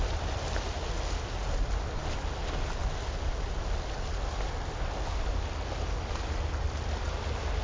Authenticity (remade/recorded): recorded